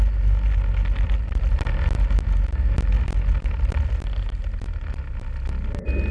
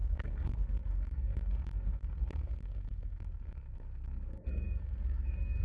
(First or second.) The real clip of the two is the first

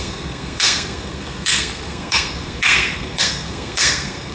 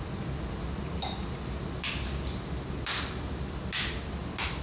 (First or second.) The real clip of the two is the second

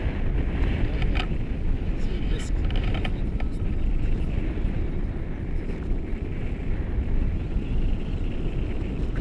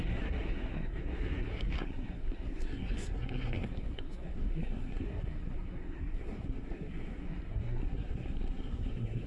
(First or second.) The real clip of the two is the first